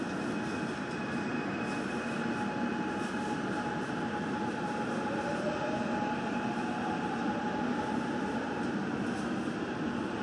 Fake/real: real